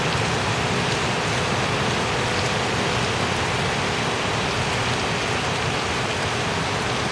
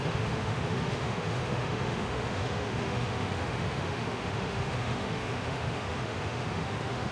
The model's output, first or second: second